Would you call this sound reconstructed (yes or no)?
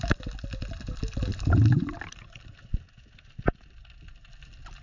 no